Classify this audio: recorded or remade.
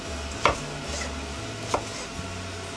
recorded